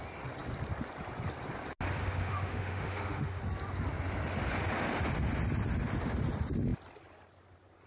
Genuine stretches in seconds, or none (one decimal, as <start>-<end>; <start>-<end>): 0.0-2.0; 3.4-7.9